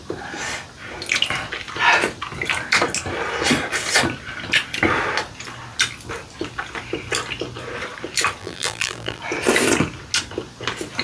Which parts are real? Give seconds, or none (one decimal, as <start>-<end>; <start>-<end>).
0.0-8.4; 9.2-11.0